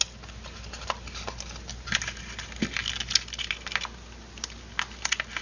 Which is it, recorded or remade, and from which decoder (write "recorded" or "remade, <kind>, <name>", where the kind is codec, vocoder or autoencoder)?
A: recorded